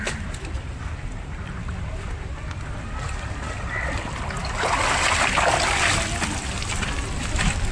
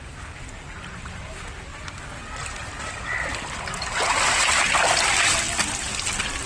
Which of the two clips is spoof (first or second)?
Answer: first